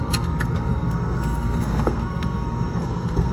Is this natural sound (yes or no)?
no